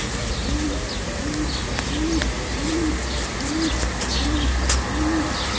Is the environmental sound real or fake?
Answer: real